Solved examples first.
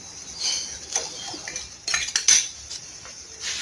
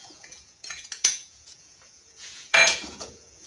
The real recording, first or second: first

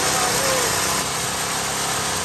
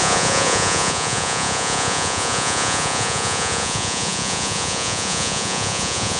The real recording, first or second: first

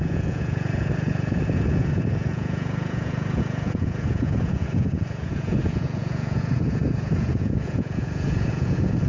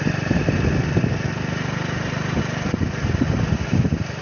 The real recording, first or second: second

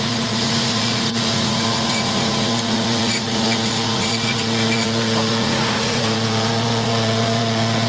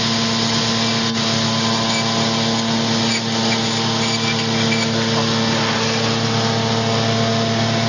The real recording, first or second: second